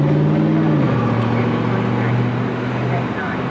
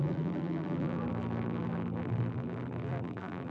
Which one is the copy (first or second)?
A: second